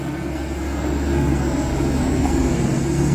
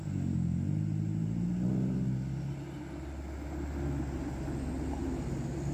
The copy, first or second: first